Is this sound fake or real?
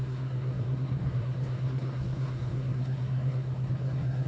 fake